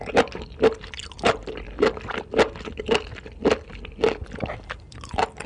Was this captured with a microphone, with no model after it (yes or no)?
yes